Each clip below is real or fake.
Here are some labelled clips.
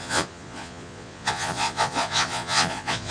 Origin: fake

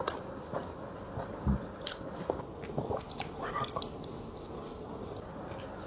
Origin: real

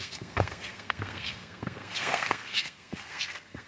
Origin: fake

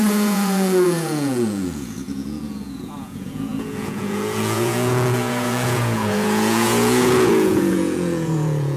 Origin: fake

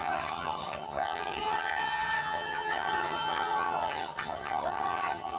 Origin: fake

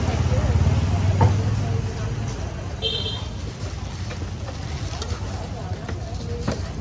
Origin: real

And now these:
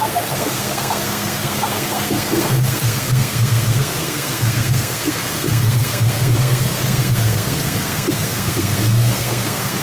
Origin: fake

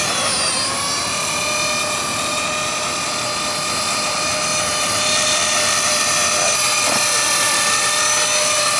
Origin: real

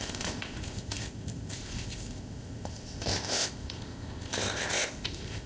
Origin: fake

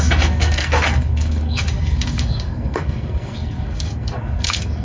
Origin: fake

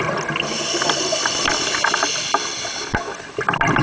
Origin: real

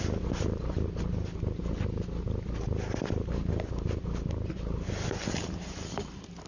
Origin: real